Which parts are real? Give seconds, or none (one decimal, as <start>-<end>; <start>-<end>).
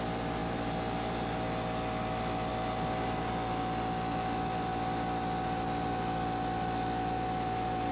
0.0-7.9